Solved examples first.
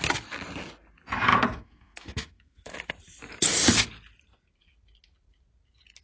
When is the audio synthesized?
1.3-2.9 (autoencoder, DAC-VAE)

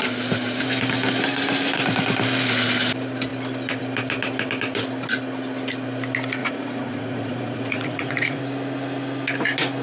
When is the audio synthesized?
6.4-8.4 (vocoder, Vocos)

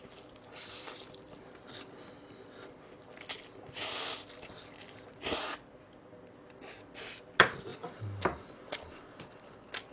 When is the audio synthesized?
none

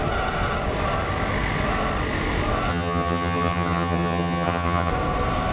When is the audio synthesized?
2.7-4.9 (vocoder, HiFi-GAN)

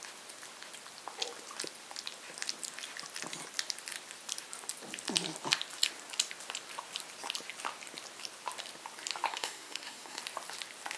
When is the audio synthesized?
9.3-10.2 (codec, SNAC)

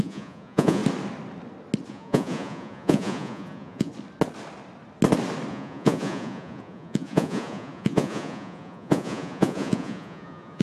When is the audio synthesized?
0.0-0.8 (vocoder, Vocos); 1.9-3.9; 5.5-10.6

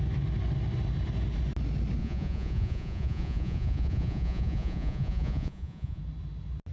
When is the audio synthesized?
2.0-6.0 (vocoder, Vocos)

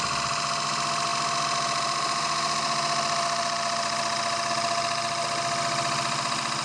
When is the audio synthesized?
none